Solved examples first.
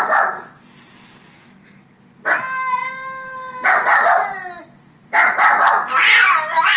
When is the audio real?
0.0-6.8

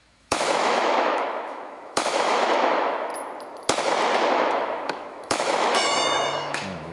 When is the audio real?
3.1-4.3

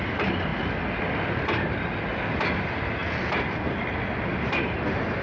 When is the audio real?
0.0-5.2

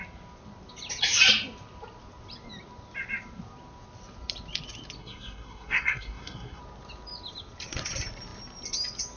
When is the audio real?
0.0-5.0; 6.6-9.2